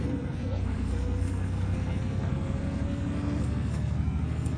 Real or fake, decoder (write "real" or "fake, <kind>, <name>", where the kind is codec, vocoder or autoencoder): fake, codec, SNAC